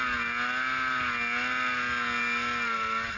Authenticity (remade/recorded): recorded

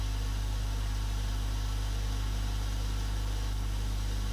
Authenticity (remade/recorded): recorded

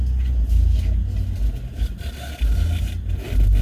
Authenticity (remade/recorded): recorded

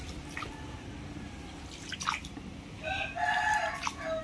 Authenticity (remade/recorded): recorded